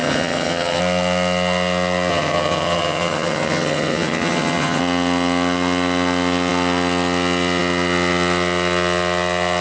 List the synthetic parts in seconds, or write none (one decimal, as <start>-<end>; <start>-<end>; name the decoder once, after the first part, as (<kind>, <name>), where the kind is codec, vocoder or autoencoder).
0.0-0.8 (vocoder, HiFi-GAN); 2.1-4.8